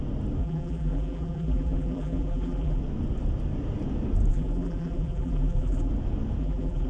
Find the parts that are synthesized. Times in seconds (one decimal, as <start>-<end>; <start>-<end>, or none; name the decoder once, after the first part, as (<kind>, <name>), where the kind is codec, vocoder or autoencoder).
0.4-2.8 (vocoder, BigVGAN v2); 4.3-5.9; 6.4-6.9